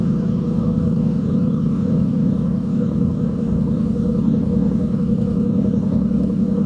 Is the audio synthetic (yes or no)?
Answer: yes